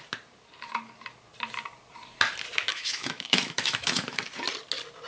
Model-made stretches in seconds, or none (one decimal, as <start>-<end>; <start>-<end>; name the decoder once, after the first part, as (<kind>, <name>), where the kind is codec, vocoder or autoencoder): 2.7-4.2 (autoencoder, DAC-VAE)